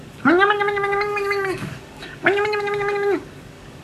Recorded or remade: remade